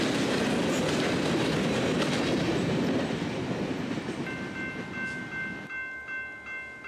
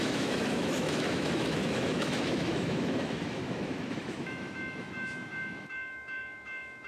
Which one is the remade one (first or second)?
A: second